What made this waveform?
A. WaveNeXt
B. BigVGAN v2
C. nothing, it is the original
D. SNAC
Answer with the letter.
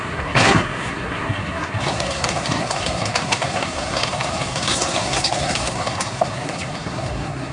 D